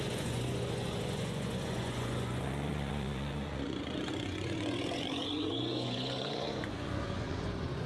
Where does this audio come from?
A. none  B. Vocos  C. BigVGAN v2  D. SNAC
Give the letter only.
B